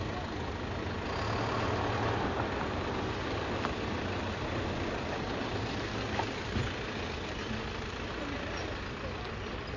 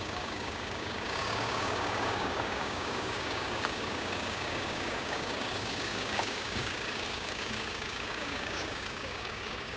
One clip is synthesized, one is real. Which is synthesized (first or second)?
second